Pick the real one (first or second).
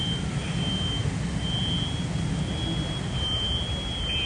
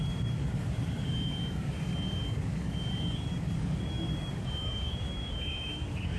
first